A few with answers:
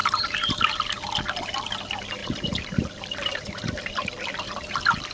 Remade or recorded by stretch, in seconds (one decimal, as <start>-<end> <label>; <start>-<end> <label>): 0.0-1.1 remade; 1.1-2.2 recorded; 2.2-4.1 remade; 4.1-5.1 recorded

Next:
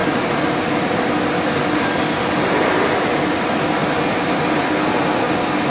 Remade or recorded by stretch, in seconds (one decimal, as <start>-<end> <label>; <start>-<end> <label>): 0.0-5.7 recorded

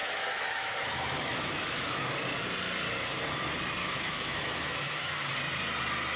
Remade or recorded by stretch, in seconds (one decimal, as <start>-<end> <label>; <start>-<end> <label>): 0.0-2.1 remade; 2.1-3.8 recorded; 3.8-5.3 remade; 5.3-6.2 recorded